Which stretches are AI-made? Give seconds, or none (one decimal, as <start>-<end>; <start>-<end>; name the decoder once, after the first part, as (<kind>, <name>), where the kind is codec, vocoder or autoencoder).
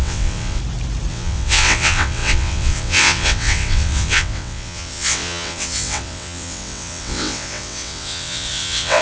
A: 0.0-0.6 (vocoder, WaveNeXt); 1.1-9.0